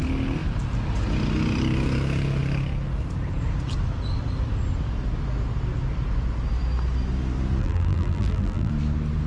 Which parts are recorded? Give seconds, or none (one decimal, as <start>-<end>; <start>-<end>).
0.0-7.6; 8.7-9.3